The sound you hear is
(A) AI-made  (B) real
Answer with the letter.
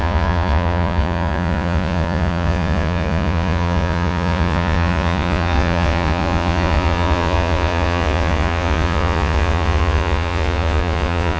A